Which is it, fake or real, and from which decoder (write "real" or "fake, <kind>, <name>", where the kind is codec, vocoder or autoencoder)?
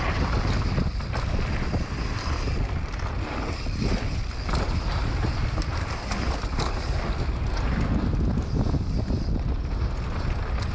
real